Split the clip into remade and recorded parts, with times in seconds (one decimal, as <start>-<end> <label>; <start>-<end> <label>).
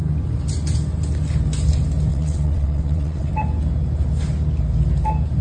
0.0-2.1 recorded; 2.1-3.3 remade; 3.3-5.4 recorded